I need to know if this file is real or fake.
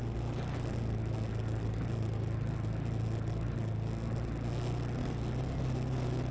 real